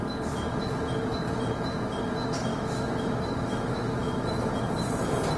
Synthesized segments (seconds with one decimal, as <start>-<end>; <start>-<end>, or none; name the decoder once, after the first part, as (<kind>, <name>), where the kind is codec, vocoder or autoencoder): 2.5-4.6 (autoencoder, DAC-VAE)